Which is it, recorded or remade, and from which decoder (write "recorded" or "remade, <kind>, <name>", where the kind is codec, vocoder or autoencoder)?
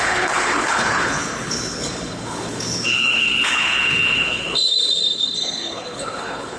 remade, codec, HILCodec